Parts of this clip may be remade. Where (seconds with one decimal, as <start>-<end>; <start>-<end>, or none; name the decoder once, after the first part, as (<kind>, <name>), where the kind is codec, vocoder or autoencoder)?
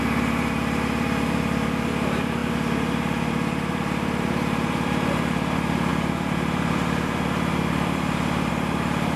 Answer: 0.0-2.4 (vocoder, BigVGAN v2); 3.3-9.2